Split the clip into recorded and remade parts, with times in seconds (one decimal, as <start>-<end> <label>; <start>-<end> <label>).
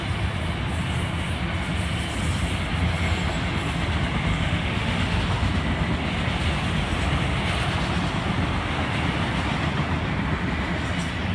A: 0.0-4.3 recorded; 4.3-5.2 remade; 5.2-11.3 recorded